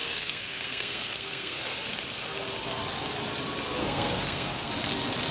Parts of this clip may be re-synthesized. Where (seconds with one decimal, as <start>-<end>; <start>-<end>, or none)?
0.0-1.8; 3.8-4.7

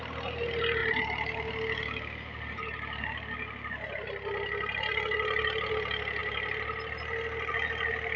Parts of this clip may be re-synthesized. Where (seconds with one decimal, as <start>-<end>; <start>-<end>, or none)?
none

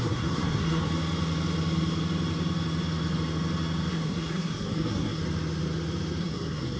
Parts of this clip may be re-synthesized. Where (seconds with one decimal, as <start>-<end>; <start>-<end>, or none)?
0.0-0.9; 3.9-5.2; 6.2-6.8

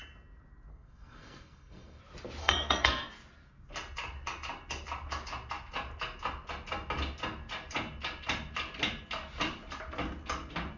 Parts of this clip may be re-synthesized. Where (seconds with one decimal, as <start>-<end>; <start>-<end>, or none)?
0.7-2.0; 2.4-3.1

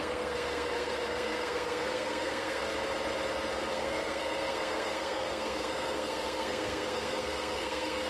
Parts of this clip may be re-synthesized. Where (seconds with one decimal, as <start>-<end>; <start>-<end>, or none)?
0.0-2.6; 3.7-8.1